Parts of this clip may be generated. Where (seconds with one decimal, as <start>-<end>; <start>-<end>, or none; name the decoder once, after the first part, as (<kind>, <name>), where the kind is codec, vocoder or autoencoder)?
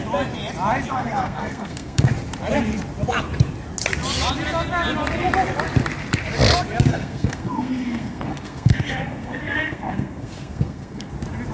0.9-2.1 (codec, SNAC); 6.9-11.1